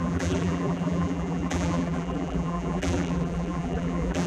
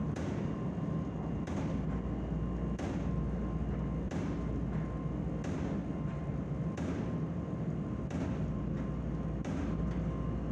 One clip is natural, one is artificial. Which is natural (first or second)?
second